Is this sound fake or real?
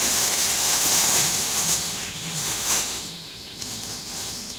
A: fake